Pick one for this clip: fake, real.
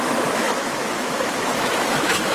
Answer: fake